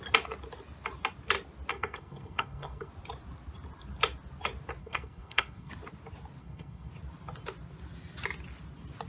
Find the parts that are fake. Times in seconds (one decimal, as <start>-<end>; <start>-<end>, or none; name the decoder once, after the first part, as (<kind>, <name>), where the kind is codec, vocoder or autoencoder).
1.7-2.9 (codec, SNAC); 4.8-5.7; 6.4-6.9